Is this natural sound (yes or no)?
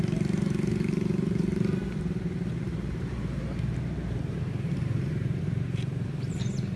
no